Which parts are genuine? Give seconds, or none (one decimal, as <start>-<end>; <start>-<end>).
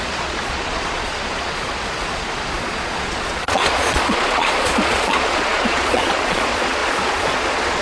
none